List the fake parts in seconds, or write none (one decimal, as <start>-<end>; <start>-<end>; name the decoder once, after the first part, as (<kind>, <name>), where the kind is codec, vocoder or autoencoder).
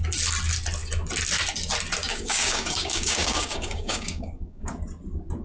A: 2.0-4.8 (codec, DAC)